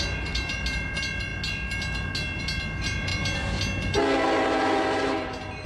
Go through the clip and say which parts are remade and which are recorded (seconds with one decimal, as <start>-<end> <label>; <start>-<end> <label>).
0.0-5.7 recorded